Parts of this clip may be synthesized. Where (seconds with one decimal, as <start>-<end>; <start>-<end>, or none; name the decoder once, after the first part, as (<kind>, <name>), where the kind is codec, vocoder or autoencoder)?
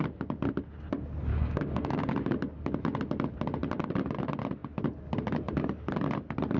1.3-2.2 (codec, DAC)